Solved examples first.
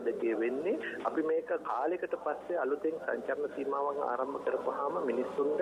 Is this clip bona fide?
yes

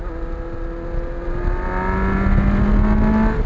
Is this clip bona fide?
yes